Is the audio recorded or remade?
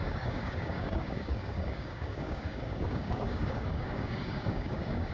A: remade